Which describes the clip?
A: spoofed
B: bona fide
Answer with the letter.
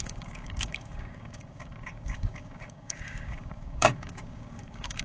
A